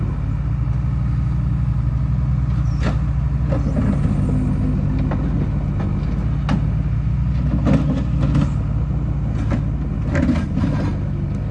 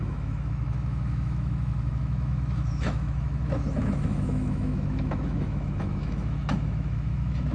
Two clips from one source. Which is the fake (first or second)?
second